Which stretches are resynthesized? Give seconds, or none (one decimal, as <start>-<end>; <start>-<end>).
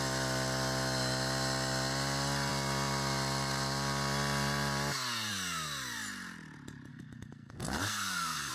6.9-8.5